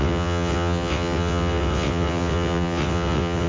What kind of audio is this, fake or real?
fake